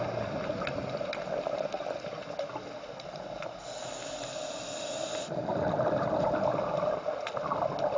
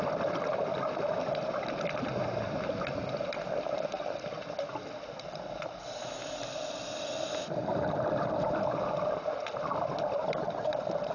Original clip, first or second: first